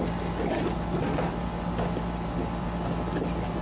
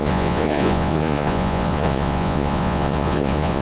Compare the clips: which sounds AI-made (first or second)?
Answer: second